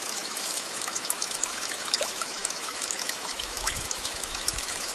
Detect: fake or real fake